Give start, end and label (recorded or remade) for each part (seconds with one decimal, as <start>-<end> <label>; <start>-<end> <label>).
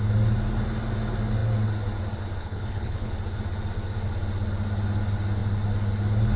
0.0-2.4 recorded; 2.4-3.1 remade; 3.1-6.4 recorded